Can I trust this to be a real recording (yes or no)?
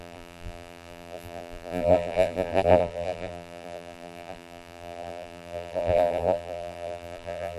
no